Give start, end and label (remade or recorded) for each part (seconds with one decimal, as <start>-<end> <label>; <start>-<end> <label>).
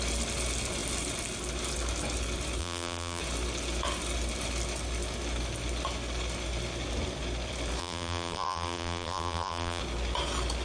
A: 0.0-2.6 recorded; 2.6-3.2 remade; 3.2-7.8 recorded; 7.8-9.8 remade; 9.8-10.6 recorded